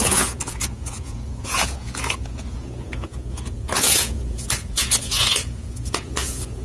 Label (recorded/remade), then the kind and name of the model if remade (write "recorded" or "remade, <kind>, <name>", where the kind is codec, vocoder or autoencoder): remade, vocoder, Vocos